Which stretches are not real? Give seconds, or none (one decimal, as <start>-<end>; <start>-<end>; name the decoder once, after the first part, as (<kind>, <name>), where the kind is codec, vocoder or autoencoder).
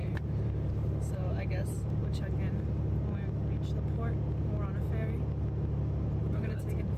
0.0-2.0 (vocoder, BigVGAN v2); 6.2-7.0